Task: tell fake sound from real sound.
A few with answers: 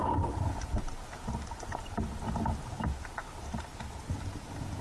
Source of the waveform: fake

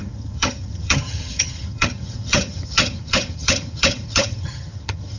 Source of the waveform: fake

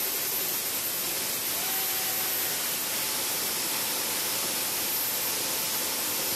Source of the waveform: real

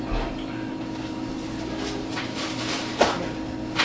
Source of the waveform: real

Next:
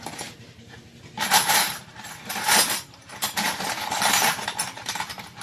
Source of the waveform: fake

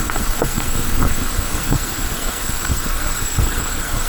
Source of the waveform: fake